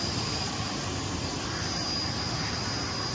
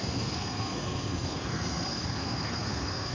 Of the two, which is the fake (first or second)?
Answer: second